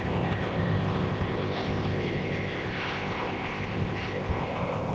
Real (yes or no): no